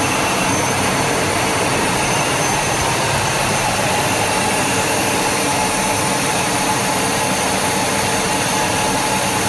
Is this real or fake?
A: fake